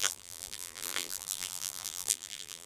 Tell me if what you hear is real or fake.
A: fake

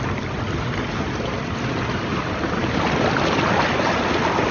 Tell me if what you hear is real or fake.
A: real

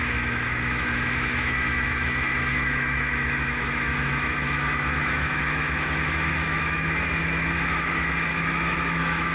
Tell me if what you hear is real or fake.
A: fake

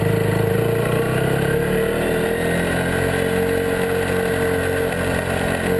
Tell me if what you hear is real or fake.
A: real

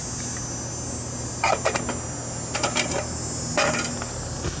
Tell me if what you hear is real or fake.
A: real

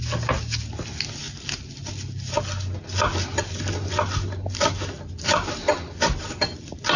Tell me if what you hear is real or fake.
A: real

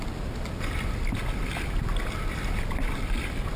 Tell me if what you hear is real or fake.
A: real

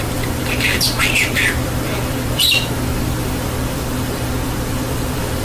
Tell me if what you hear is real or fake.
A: fake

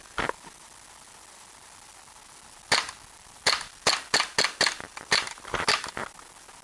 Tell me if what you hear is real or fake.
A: real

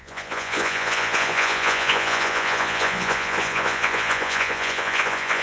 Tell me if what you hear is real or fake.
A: fake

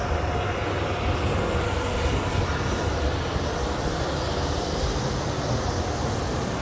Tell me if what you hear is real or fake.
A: real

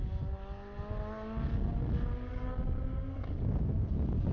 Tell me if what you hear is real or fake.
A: real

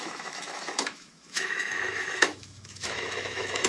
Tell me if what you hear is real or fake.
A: fake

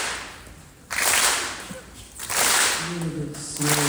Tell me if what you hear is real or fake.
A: real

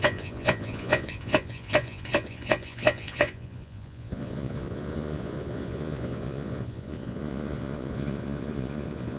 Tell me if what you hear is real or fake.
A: fake